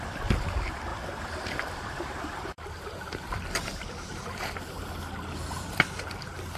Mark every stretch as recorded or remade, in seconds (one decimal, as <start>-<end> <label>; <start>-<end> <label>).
0.0-0.9 recorded; 0.9-4.9 remade; 4.9-6.6 recorded